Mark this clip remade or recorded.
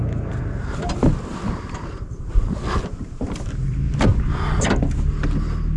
recorded